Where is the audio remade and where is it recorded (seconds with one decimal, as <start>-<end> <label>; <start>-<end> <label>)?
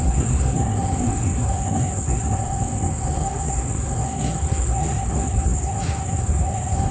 0.0-6.9 remade